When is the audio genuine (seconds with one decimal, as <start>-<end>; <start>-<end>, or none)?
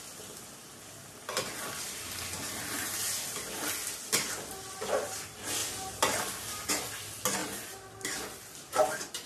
0.0-9.3